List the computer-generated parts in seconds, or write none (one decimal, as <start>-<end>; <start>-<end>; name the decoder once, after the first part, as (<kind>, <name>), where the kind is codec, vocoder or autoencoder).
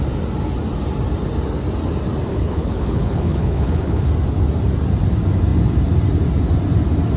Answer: 2.3-4.1 (codec, HILCodec)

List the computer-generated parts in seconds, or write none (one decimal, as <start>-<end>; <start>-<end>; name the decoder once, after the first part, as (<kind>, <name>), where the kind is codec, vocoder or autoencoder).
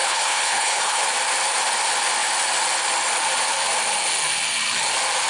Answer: 0.0-1.0 (codec, HILCodec)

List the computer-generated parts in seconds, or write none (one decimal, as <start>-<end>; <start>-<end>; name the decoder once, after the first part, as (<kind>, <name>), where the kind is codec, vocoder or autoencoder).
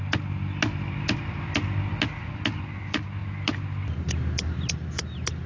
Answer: none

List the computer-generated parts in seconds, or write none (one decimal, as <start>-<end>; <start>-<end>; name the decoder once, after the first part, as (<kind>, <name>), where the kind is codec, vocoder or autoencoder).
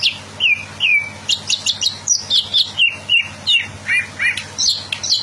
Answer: none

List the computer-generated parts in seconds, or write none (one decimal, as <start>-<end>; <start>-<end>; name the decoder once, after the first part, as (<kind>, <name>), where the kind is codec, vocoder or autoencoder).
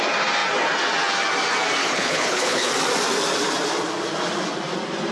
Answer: 1.8-2.7 (codec, HILCodec)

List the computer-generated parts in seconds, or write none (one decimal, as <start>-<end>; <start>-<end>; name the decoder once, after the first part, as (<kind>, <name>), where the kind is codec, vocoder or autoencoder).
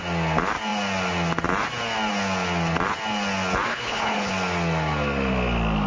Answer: 3.7-4.3 (codec, HILCodec)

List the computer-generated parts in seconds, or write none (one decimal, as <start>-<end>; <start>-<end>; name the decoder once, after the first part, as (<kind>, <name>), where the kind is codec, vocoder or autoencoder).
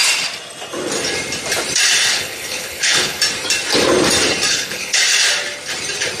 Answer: 2.1-3.2 (codec, HILCodec); 4.5-5.0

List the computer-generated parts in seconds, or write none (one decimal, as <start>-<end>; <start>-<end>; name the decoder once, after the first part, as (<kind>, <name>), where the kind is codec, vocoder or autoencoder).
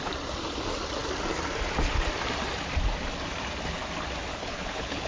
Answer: 4.3-5.1 (codec, HILCodec)